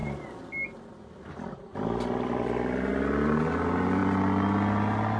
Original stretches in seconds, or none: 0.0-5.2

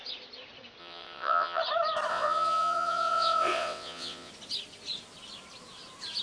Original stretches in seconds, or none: 0.0-0.8; 1.6-2.1; 4.3-6.2

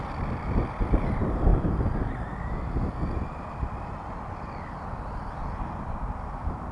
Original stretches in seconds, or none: 0.0-6.7

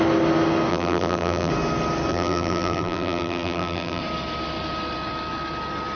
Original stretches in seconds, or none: 0.0-0.7; 1.5-2.1; 4.0-5.9

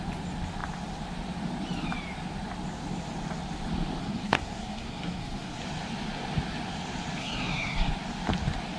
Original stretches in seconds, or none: 0.0-4.0; 5.6-7.2; 7.9-8.8